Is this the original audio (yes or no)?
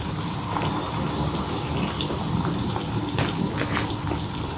yes